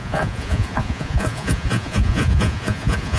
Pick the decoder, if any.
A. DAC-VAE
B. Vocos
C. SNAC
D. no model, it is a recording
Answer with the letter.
B